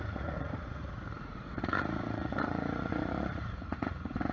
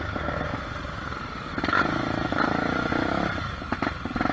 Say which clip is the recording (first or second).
second